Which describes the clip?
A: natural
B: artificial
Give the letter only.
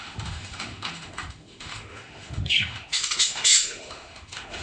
B